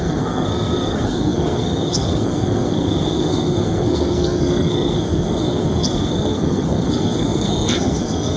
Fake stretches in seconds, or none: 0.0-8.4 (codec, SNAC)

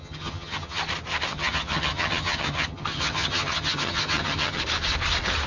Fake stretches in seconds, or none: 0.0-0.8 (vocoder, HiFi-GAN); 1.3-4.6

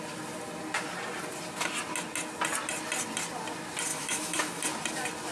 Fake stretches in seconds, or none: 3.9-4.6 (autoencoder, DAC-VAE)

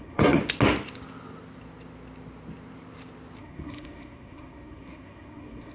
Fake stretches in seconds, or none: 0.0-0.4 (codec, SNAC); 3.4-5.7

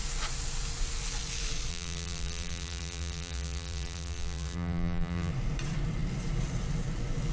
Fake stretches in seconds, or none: 1.7-5.3 (vocoder, BigVGAN v2)